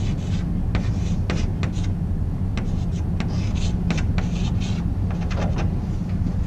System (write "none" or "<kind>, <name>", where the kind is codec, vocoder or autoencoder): none